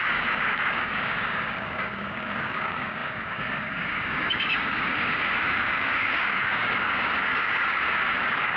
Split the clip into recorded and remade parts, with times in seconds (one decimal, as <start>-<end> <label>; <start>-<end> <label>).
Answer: 0.0-8.6 remade